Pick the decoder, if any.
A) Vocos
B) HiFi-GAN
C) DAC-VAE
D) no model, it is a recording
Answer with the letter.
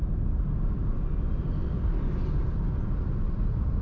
D